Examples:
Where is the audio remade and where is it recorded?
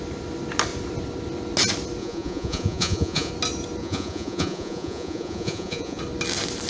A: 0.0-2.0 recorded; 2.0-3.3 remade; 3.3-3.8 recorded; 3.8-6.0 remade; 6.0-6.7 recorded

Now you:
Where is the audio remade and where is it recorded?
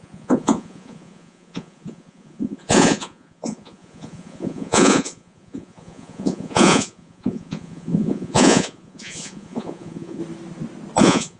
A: 0.0-10.2 remade; 10.2-11.0 recorded; 11.0-11.4 remade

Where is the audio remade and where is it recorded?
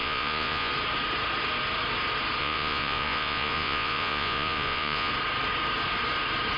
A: 0.0-0.7 remade; 0.7-2.4 recorded; 2.4-5.1 remade; 5.1-6.6 recorded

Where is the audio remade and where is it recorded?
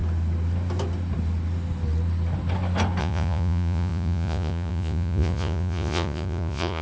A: 0.0-3.0 recorded; 3.0-6.8 remade